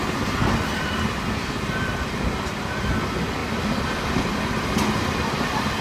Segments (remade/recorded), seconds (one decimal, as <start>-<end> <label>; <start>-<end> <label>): 0.0-5.8 recorded